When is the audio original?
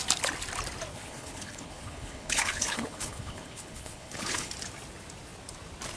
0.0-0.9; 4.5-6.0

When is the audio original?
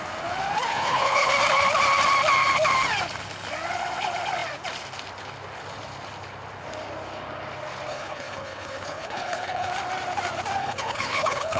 0.0-0.7; 1.3-7.9; 9.7-10.6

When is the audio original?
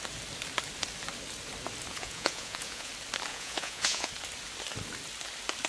0.0-1.9; 2.9-3.3; 4.1-5.7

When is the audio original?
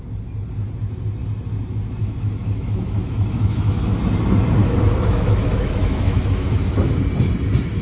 0.0-2.0; 4.0-4.6; 6.7-7.8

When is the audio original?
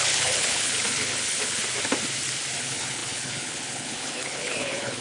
1.6-2.6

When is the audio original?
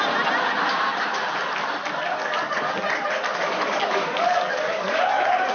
0.0-2.2; 2.7-3.3; 5.0-5.5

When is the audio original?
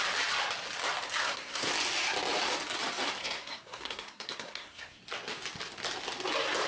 0.0-1.2; 1.7-3.2; 5.0-6.7